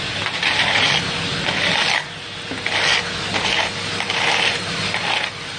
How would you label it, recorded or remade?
recorded